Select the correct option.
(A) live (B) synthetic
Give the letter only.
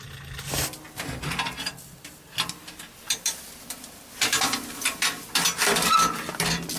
A